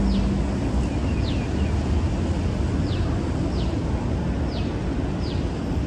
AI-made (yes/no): no